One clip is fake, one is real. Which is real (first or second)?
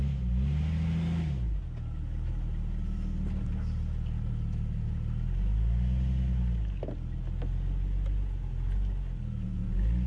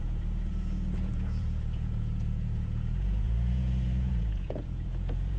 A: first